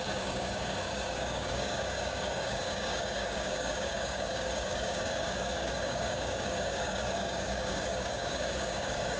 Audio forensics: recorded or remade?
remade